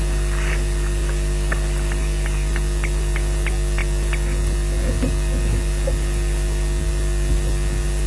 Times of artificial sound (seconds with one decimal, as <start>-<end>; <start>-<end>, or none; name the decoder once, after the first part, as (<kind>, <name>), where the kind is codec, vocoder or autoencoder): none